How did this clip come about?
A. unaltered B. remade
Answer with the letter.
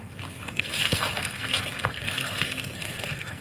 B